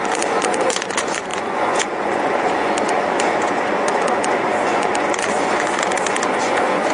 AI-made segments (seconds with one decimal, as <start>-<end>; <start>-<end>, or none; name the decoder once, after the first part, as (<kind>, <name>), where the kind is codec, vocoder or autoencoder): 0.0-6.9 (vocoder, Vocos)